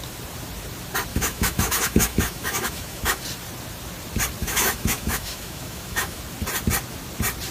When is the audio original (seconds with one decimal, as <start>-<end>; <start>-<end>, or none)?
0.0-1.1; 3.2-4.4; 6.2-7.5